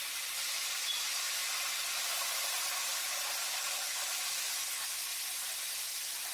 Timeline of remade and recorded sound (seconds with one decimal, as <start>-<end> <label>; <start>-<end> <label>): 0.0-6.3 recorded